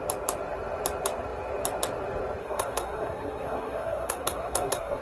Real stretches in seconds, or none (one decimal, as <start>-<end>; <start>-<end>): 0.0-2.4